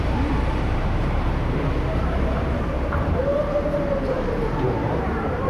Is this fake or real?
fake